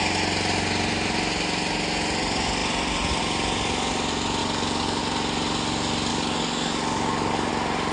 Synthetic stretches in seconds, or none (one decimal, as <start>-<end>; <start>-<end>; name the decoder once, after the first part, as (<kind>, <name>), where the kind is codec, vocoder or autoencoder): 4.4-5.0 (codec, DAC); 6.1-7.5